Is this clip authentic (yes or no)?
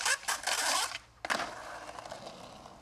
yes